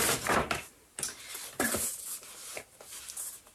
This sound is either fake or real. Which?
real